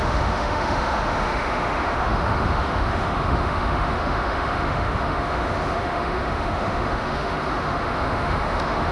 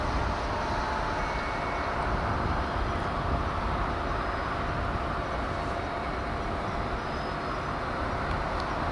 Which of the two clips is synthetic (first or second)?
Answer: first